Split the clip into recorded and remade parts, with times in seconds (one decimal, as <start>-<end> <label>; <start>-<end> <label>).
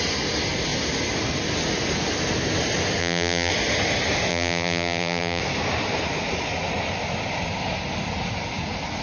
0.0-3.0 recorded; 3.0-3.5 remade; 3.5-4.3 recorded; 4.3-5.4 remade; 5.4-9.0 recorded